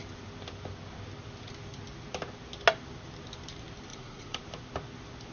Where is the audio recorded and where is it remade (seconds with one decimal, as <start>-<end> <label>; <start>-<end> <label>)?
0.0-3.9 recorded; 3.9-4.4 remade; 4.4-5.3 recorded